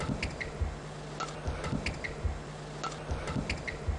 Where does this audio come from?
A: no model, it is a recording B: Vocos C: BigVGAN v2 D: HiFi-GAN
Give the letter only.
A